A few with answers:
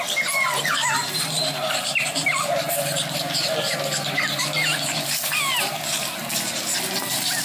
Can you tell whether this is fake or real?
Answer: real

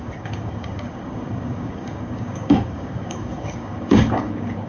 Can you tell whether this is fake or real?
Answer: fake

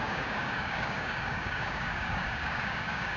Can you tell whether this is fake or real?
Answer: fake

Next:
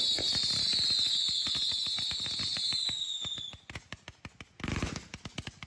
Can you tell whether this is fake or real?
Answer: real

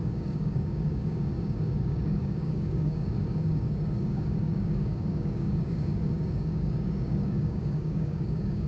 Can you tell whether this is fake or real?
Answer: fake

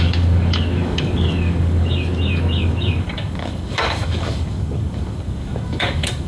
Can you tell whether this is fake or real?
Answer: fake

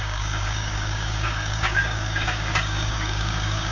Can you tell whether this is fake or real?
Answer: fake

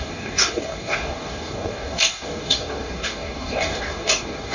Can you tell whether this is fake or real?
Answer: fake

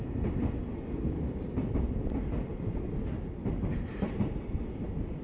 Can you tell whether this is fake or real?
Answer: real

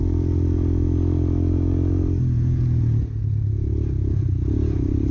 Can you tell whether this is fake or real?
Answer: real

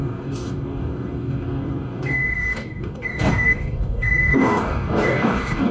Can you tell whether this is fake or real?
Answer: fake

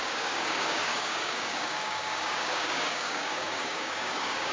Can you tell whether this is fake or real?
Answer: fake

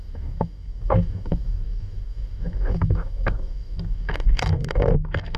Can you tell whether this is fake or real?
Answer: fake